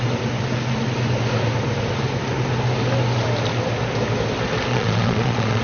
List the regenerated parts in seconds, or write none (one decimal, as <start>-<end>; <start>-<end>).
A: 4.7-5.6

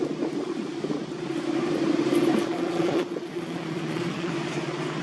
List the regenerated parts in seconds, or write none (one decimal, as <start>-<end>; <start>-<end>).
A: 2.4-4.3